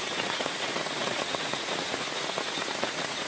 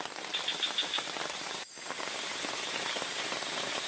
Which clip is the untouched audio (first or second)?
second